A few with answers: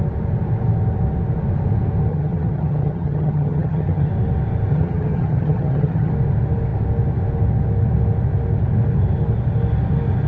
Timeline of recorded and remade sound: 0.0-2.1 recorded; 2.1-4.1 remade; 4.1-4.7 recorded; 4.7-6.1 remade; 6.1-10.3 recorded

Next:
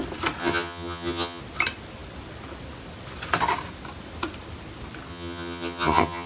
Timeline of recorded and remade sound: 0.0-0.4 recorded; 0.4-1.4 remade; 1.4-5.1 recorded; 5.1-6.3 remade